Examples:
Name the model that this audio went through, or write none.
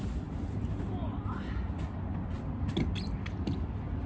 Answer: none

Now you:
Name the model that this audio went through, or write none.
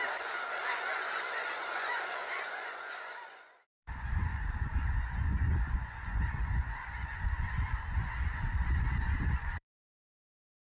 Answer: vocoder, Vocos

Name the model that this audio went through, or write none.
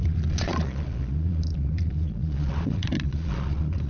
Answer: vocoder, Vocos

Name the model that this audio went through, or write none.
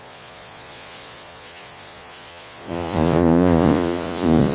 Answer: vocoder, Vocos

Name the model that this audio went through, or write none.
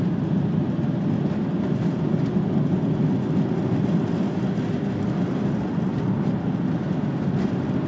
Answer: none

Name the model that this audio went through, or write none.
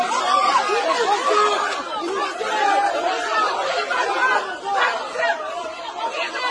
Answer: none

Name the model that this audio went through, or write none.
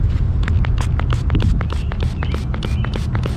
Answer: none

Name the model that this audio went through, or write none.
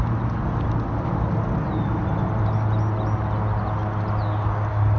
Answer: none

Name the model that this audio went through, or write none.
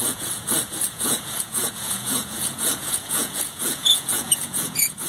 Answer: vocoder, Vocos